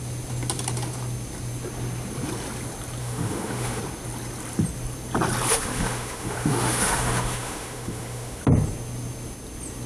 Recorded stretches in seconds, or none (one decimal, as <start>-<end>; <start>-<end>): 0.0-3.0; 3.8-5.5; 8.4-9.9

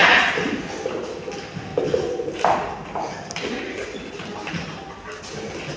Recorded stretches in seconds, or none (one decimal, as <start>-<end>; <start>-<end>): 0.6-5.8

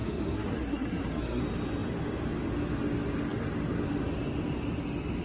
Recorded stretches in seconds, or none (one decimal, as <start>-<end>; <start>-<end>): 1.4-5.2

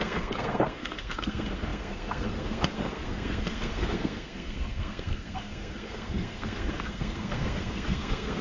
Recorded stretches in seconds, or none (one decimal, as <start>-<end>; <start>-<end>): none

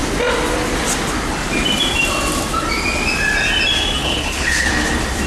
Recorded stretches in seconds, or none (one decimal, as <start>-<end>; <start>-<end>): 0.0-4.0; 4.7-5.3

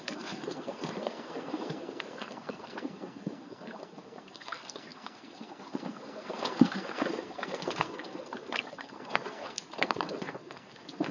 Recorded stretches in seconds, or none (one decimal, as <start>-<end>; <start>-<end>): none

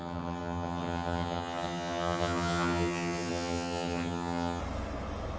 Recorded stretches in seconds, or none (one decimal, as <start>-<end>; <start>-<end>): 4.6-5.4

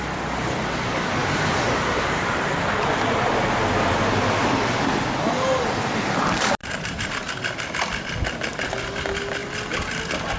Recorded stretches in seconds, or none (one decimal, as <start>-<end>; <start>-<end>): 0.0-1.2; 3.3-6.6; 7.1-10.4